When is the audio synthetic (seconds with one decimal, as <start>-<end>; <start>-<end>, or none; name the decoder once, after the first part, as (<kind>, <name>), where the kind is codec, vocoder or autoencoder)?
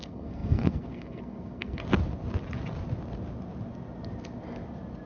0.0-1.8 (codec, SNAC)